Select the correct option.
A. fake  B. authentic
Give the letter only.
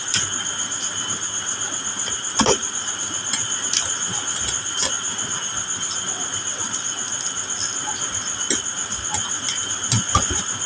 B